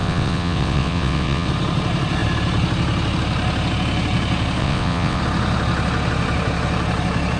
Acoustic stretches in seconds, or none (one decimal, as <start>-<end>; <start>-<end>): 1.5-4.6; 5.2-7.4